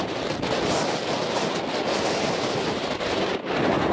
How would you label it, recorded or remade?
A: recorded